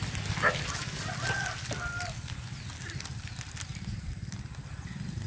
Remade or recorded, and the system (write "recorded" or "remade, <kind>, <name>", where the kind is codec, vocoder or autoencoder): recorded